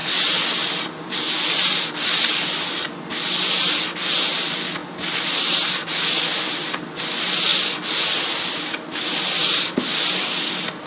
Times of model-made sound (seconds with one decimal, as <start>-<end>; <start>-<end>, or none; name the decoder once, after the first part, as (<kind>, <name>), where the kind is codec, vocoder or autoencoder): none

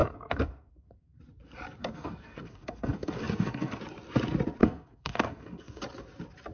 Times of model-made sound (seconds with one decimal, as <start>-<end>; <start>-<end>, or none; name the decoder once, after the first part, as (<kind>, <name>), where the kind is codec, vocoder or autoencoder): 0.0-1.2 (codec, SNAC); 1.8-3.8; 4.6-5.8